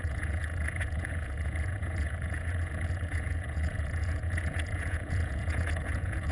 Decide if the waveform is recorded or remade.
remade